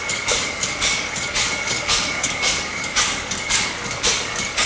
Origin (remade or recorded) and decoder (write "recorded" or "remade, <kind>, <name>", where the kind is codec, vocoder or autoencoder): remade, codec, DAC